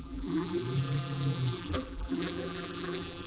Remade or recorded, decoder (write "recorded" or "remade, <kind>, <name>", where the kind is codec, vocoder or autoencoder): remade, vocoder, BigVGAN v2